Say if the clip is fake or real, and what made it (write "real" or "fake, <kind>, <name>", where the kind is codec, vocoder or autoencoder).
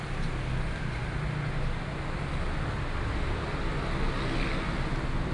real